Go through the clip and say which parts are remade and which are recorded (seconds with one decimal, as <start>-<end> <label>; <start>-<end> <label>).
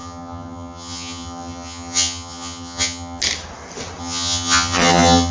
0.0-3.2 remade; 3.2-4.0 recorded; 4.0-5.3 remade